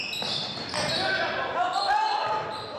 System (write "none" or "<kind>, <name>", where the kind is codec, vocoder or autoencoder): none